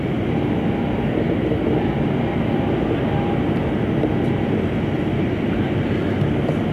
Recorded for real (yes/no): yes